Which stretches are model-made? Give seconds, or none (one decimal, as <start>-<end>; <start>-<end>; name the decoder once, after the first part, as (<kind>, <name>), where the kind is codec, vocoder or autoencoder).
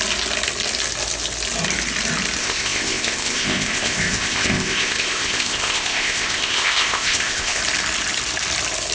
2.4-7.6 (codec, ZipCodec)